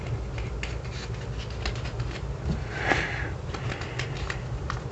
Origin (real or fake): real